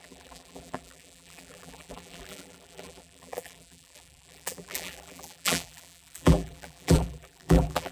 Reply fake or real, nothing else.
fake